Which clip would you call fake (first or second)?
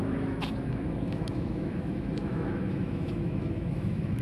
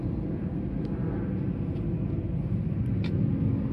first